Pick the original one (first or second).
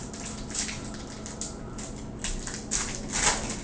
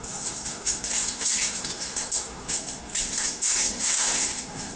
first